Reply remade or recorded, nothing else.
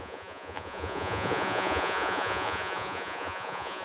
remade